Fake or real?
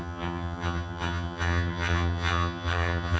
fake